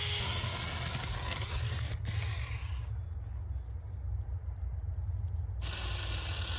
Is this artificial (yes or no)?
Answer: no